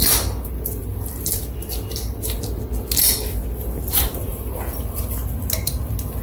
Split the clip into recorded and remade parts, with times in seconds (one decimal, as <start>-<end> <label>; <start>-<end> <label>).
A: 0.0-0.8 recorded; 0.8-2.6 remade; 2.6-4.3 recorded; 4.3-5.0 remade; 5.0-6.2 recorded